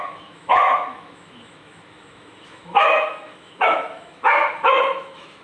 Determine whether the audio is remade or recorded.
remade